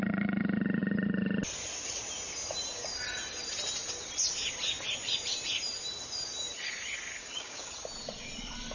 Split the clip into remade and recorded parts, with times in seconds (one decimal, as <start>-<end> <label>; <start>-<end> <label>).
0.0-7.2 recorded; 7.2-7.7 remade; 7.7-8.7 recorded